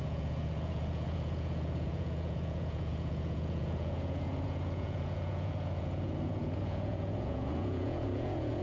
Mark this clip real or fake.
fake